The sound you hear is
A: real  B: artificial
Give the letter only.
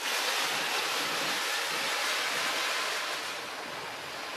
A